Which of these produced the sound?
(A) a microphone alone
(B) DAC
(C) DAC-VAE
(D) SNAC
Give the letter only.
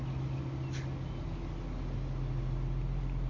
A